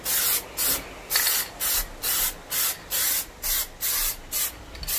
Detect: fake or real real